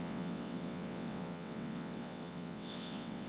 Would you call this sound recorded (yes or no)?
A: no